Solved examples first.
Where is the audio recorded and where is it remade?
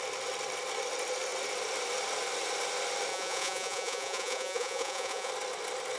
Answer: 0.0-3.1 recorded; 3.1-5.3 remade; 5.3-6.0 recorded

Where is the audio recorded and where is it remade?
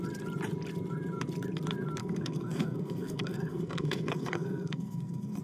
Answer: 0.0-2.0 recorded; 2.0-5.4 remade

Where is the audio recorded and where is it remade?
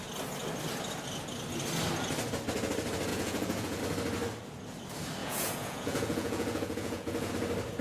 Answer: 0.0-3.1 recorded; 3.1-3.8 remade; 3.8-5.2 recorded; 5.2-7.3 remade; 7.3-7.8 recorded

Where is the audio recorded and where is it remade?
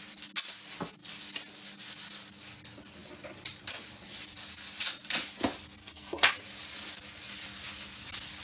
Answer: 0.0-5.8 recorded; 5.8-6.3 remade; 6.3-8.4 recorded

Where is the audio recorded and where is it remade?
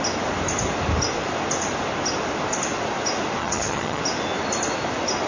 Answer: 0.0-3.4 recorded; 3.4-4.0 remade; 4.0-5.3 recorded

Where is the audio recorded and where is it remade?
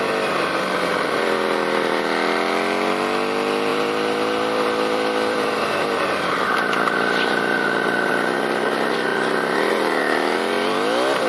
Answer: 0.0-3.7 recorded; 3.7-8.1 remade; 8.1-9.1 recorded; 9.1-10.0 remade; 10.0-11.3 recorded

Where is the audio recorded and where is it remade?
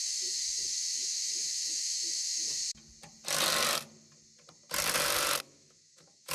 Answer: 0.0-2.6 remade; 2.6-5.4 recorded; 5.4-6.3 remade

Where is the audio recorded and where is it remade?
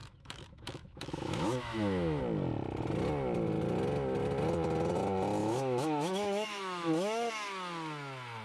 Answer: 0.0-2.2 remade; 2.2-5.4 recorded; 5.4-7.3 remade; 7.3-8.4 recorded